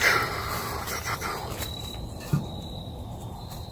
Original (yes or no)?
yes